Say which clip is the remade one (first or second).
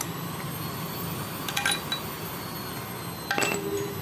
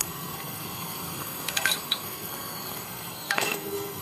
second